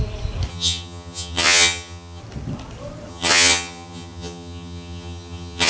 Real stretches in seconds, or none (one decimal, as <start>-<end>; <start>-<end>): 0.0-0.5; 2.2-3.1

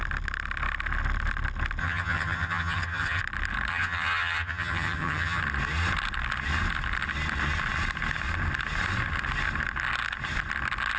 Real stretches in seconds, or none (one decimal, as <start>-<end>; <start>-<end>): 0.0-1.8; 3.2-3.7; 5.4-11.0

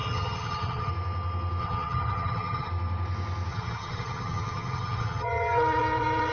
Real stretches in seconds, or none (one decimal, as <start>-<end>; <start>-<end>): 0.9-1.6; 2.7-3.5

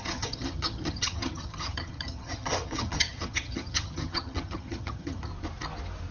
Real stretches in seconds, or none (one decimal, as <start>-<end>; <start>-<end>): 5.3-6.1

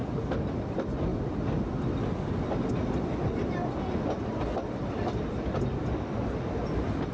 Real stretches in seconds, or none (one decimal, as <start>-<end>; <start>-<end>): 0.0-7.1